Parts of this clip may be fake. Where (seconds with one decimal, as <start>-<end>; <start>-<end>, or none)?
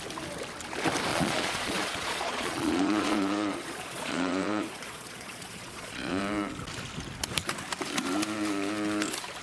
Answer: 1.1-6.2